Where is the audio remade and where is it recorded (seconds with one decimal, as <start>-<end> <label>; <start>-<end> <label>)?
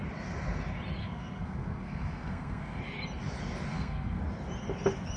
0.0-1.0 recorded; 1.0-2.8 remade; 2.8-3.7 recorded; 3.7-4.2 remade; 4.2-5.2 recorded